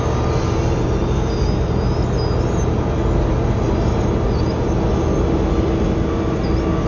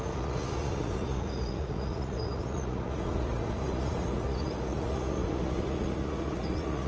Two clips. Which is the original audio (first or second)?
first